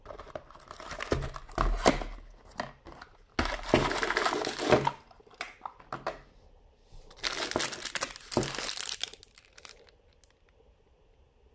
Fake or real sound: real